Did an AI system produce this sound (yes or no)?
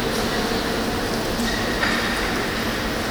no